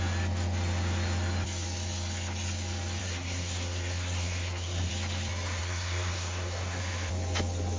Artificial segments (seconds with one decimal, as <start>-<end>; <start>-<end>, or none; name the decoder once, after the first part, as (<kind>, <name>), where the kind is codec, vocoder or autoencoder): 3.0-4.9 (codec, SNAC); 5.6-6.8